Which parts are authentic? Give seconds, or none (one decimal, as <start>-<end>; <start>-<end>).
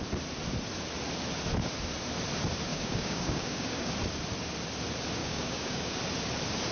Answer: 0.0-2.7; 3.9-5.2; 6.0-6.7